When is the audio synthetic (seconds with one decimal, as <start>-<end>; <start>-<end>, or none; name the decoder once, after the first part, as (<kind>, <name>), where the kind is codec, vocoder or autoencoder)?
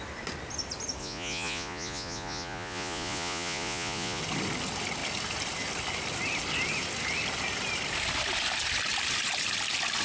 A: 1.0-4.2 (vocoder, Vocos)